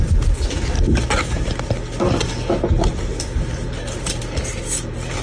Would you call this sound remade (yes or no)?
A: no